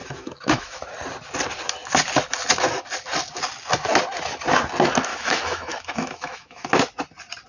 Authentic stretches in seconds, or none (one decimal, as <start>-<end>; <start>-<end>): 0.8-5.1; 6.7-7.5